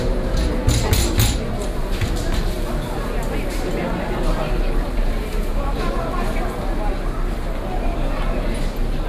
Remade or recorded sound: recorded